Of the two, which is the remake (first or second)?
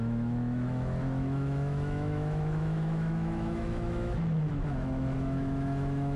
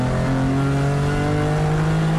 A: first